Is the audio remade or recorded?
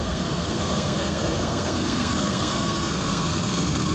remade